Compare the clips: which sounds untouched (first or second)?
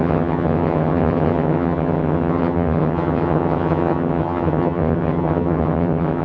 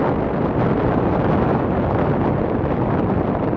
second